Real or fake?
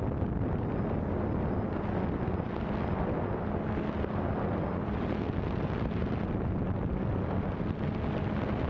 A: real